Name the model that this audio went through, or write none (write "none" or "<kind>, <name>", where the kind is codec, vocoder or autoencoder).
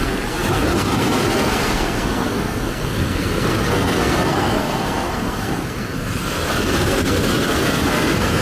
codec, SNAC